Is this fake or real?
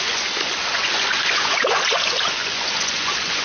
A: fake